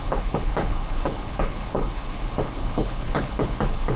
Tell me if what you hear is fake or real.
fake